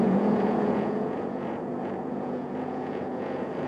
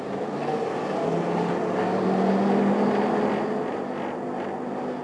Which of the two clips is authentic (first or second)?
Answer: second